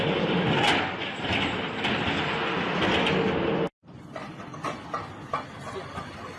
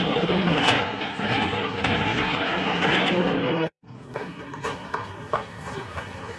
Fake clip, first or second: second